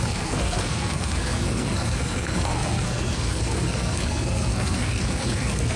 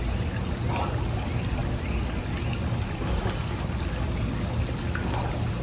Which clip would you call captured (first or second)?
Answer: second